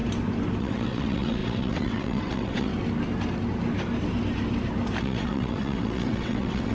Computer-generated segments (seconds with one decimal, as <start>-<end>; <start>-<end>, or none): 0.6-2.7; 5.0-6.7